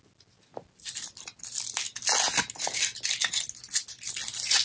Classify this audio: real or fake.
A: real